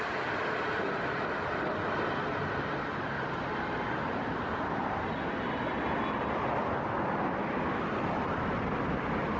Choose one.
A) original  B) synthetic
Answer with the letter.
A